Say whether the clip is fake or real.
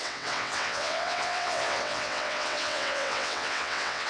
fake